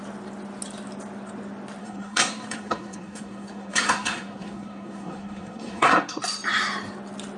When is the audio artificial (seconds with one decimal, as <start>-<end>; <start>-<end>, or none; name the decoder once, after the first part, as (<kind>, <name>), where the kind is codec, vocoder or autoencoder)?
1.8-6.2 (codec, SNAC)